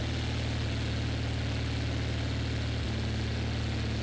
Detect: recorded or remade recorded